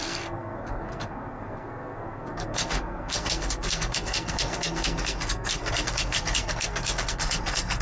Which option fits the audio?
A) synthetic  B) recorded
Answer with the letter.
A